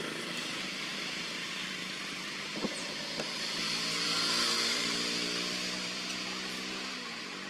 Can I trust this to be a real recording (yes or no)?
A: no